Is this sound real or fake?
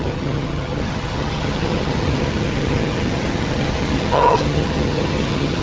fake